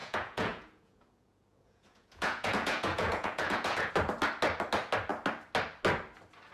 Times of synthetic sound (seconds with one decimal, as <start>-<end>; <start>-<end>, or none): 0.0-3.9